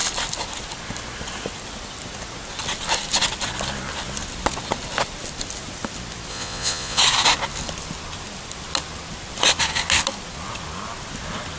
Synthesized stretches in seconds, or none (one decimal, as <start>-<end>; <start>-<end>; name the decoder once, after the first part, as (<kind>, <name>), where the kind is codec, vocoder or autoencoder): 6.3-7.0 (vocoder, Vocos)